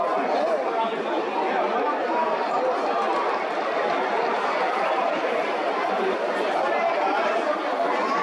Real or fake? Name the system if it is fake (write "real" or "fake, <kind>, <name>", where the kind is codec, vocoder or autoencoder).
real